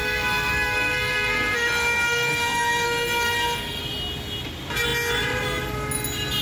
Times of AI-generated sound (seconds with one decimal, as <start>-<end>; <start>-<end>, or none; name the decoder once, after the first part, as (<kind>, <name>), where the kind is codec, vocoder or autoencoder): 0.0-3.8 (codec, SNAC)